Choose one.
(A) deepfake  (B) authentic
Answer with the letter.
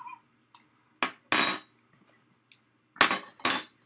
B